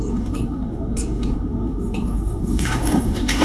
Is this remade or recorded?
remade